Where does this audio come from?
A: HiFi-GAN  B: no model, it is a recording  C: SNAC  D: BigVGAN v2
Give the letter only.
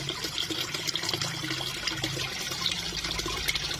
B